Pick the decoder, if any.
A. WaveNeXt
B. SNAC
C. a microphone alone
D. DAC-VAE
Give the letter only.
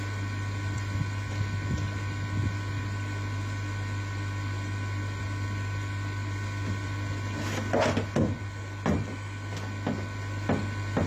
C